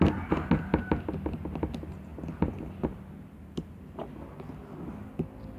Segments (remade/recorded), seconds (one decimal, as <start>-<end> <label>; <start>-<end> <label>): 0.0-5.6 recorded

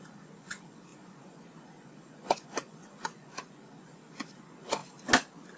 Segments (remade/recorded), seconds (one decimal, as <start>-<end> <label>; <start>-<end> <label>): 0.0-4.8 remade; 4.8-5.6 recorded

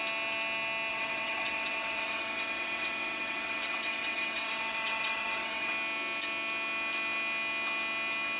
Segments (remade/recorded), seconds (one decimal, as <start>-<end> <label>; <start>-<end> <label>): 0.0-0.9 recorded; 0.9-5.7 remade; 5.7-8.4 recorded

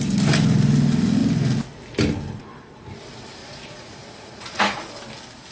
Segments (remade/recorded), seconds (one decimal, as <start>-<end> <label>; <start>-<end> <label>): 0.0-3.4 recorded; 3.4-4.9 remade; 4.9-5.5 recorded